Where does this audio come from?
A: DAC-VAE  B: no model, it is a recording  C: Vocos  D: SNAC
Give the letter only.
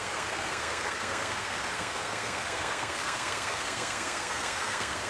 D